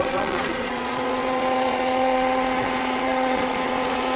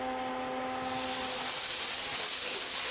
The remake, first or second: first